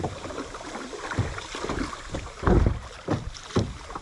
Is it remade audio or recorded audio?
recorded